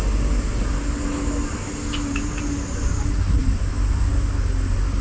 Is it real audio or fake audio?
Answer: real